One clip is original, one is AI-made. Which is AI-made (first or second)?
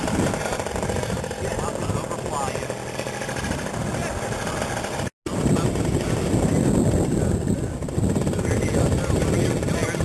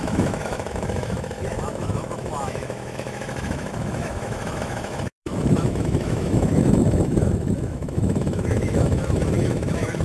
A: second